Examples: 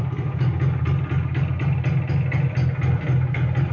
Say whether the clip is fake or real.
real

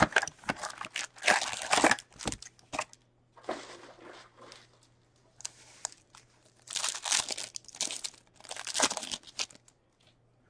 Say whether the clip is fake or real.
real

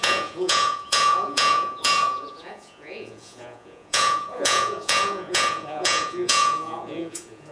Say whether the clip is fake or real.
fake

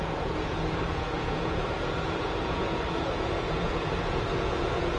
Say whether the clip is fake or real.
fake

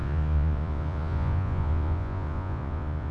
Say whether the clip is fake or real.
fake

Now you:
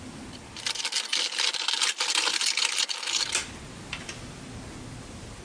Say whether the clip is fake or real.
real